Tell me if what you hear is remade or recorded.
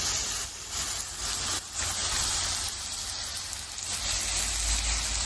recorded